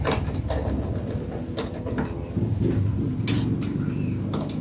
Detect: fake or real real